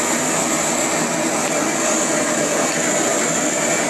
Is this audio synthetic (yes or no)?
no